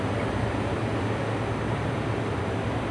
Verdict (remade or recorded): recorded